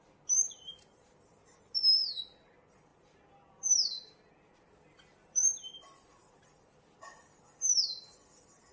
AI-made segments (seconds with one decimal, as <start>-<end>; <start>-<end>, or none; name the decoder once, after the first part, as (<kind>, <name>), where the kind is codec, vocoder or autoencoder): none